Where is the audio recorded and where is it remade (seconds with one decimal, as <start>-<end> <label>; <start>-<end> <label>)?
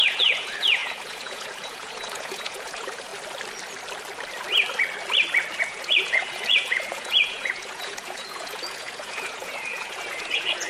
0.0-3.1 remade; 3.1-5.6 recorded; 5.6-10.7 remade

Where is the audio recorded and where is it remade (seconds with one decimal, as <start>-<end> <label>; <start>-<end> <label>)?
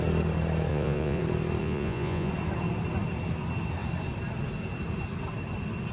0.0-0.7 recorded; 0.7-1.2 remade; 1.2-1.6 recorded; 1.6-2.3 remade; 2.3-5.9 recorded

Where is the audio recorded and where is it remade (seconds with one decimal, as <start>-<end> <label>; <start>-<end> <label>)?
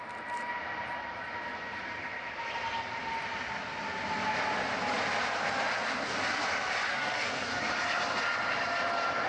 0.0-6.9 recorded; 6.9-7.6 remade; 7.6-9.3 recorded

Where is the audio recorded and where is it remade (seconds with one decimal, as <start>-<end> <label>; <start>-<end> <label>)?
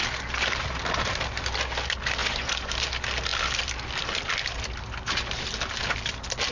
0.0-2.2 recorded; 2.2-2.7 remade; 2.7-6.5 recorded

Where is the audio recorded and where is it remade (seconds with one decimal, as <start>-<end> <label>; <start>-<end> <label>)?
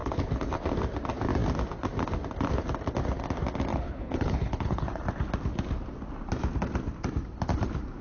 0.0-0.5 remade; 0.5-3.7 recorded; 3.7-5.0 remade; 5.0-8.0 recorded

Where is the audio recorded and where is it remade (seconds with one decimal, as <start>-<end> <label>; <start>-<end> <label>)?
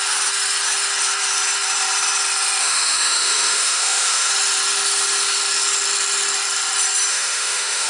0.0-2.6 recorded; 2.6-4.3 remade; 4.3-7.1 recorded; 7.1-7.9 remade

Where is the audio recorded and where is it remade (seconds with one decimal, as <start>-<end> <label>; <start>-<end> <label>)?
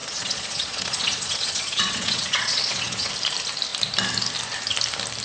0.0-3.1 remade; 3.1-5.2 recorded